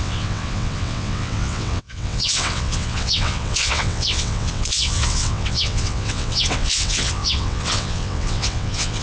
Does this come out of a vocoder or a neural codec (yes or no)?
yes